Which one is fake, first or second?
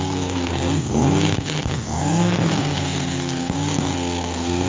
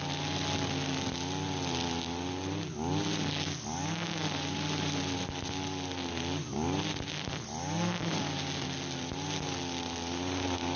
first